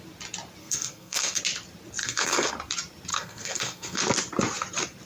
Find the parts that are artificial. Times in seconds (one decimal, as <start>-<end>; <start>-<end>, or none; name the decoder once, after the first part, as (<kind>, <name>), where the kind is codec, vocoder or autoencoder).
0.6-1.4 (codec, SNAC); 2.0-2.5; 3.1-4.0